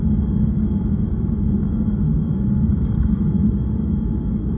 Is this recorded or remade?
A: remade